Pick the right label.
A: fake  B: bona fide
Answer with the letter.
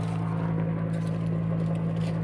B